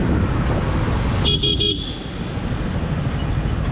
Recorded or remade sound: recorded